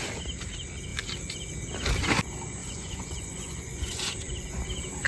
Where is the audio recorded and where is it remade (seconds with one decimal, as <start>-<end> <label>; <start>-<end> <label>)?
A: 0.0-2.6 recorded; 2.6-4.6 remade; 4.6-5.1 recorded